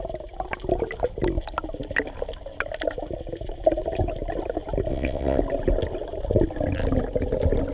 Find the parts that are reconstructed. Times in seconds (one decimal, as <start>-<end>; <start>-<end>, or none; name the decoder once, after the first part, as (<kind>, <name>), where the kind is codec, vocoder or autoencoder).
4.9-5.4 (vocoder, WaveNeXt)